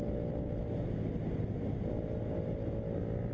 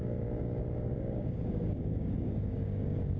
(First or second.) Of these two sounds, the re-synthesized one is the second